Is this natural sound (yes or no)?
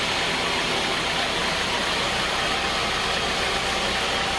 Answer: yes